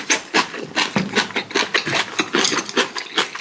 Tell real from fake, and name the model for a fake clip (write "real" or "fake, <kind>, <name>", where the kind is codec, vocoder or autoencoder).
real